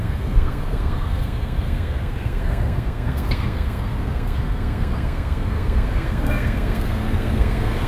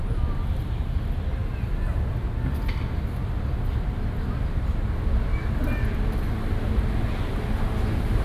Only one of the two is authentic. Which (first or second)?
second